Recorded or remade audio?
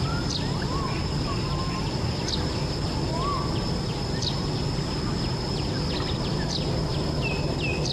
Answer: recorded